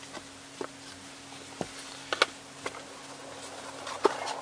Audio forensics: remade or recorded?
recorded